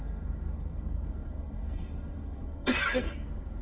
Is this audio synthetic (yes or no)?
yes